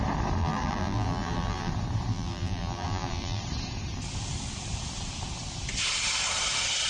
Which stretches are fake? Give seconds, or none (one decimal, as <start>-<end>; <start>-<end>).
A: 0.4-1.7; 2.1-3.4